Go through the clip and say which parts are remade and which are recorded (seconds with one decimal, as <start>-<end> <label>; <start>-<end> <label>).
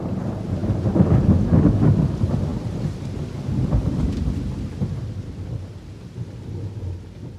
0.0-0.6 remade; 0.6-2.0 recorded; 2.0-7.4 remade